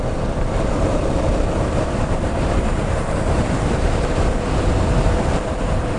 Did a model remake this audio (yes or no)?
yes